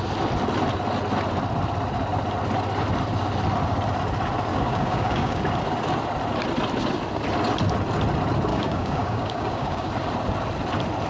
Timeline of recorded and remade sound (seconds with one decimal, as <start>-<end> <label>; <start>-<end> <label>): 0.0-4.5 recorded; 4.5-5.4 remade; 5.4-8.5 recorded; 8.5-9.9 remade; 9.9-11.1 recorded